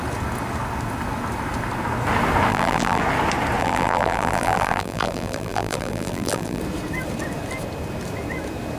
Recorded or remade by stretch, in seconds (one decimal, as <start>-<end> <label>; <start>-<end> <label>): 0.0-2.5 recorded; 2.5-3.0 remade; 3.0-3.6 recorded; 3.6-6.6 remade; 6.6-8.8 recorded